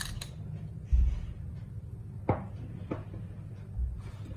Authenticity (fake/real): real